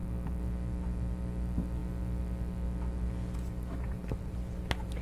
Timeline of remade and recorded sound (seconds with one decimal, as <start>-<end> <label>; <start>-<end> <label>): 0.0-1.2 recorded; 1.2-1.8 remade; 1.8-3.9 recorded; 3.9-5.0 remade